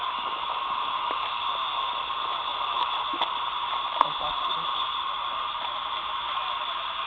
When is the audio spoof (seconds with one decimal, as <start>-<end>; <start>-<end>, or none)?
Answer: none